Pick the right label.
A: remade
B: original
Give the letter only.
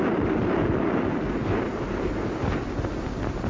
B